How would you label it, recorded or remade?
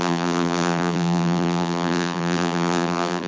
remade